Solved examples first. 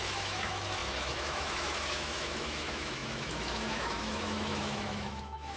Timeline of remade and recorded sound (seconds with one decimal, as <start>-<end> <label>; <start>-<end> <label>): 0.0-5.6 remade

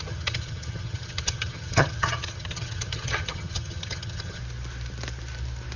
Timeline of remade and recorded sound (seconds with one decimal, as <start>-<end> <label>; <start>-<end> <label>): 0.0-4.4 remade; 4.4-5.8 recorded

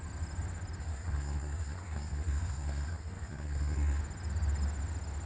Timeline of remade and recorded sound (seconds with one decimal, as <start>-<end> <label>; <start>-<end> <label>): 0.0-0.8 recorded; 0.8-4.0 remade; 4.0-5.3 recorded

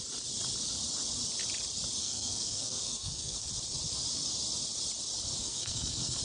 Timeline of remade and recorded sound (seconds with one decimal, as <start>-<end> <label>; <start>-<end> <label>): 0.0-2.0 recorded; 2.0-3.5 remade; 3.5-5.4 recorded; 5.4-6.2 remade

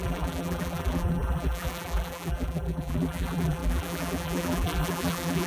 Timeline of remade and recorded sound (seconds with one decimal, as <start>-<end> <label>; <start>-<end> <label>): 0.0-5.5 remade